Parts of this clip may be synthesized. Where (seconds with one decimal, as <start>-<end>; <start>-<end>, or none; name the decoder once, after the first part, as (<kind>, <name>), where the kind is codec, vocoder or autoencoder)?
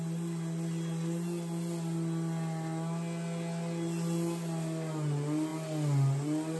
none